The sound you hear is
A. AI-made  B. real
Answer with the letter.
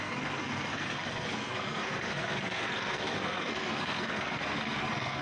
A